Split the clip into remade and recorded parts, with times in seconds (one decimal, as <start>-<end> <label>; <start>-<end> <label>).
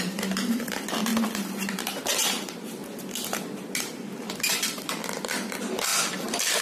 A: 0.0-1.1 remade; 1.1-1.7 recorded; 1.7-2.8 remade; 2.8-4.5 recorded; 4.5-6.6 remade